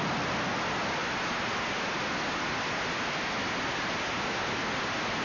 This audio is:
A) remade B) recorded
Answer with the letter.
B